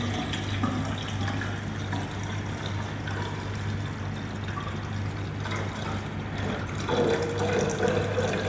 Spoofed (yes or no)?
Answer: no